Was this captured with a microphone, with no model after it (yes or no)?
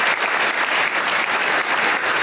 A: yes